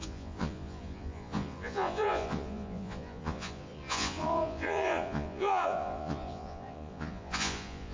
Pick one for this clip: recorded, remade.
remade